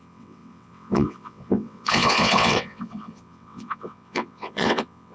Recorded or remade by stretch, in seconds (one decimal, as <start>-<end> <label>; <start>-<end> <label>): 0.0-5.1 remade